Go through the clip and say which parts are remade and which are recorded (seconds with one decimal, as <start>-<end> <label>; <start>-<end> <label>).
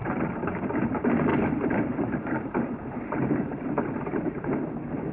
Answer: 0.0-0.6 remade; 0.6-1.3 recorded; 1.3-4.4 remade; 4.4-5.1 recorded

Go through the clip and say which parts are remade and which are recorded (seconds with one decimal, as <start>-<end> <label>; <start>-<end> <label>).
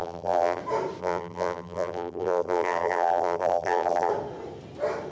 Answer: 0.0-0.6 remade; 0.6-1.0 recorded; 1.0-4.1 remade; 4.1-5.1 recorded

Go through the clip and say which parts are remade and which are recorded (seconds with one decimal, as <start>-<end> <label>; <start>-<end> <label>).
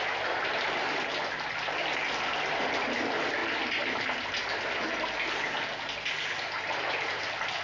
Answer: 0.0-7.6 recorded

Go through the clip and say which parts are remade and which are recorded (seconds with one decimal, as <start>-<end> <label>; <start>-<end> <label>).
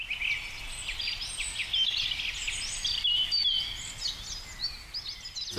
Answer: 0.0-5.6 recorded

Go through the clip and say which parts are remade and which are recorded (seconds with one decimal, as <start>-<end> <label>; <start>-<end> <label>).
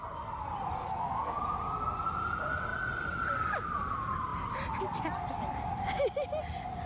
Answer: 0.0-0.8 recorded; 0.8-1.4 remade; 1.4-6.9 recorded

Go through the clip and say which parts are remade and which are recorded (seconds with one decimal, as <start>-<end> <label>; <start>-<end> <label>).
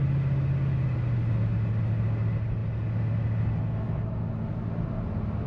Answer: 0.0-5.5 recorded